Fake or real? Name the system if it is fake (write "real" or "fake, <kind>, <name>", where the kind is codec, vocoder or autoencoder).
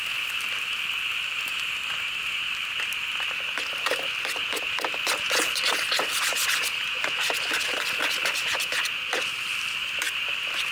real